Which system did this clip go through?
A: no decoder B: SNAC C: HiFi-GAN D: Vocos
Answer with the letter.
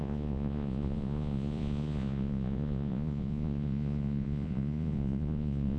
D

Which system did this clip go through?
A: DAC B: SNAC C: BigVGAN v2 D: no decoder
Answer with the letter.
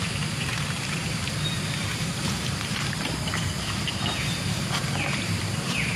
C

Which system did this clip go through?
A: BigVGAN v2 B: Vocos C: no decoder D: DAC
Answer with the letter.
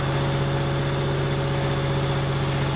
C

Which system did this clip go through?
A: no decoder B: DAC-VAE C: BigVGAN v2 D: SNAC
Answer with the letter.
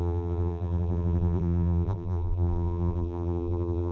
C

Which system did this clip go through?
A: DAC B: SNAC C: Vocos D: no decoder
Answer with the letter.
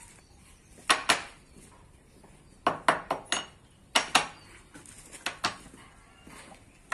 D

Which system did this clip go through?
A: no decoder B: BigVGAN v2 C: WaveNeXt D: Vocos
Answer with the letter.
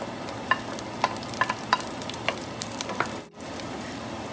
A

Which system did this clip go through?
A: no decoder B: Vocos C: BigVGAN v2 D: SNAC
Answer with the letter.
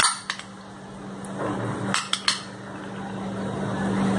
A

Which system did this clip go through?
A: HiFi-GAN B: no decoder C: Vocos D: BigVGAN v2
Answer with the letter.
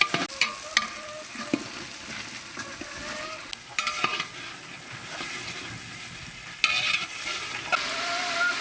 B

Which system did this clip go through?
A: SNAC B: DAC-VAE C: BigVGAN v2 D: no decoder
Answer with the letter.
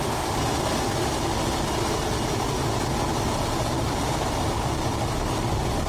D